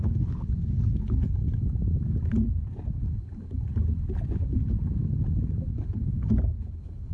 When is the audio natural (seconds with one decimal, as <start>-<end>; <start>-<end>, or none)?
1.4-5.7